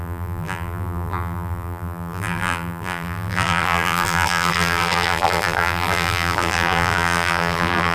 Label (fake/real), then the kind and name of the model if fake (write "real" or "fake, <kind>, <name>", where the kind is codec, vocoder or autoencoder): fake, vocoder, BigVGAN v2